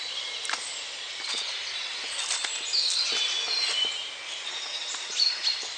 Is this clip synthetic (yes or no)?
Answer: no